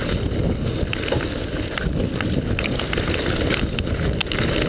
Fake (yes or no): no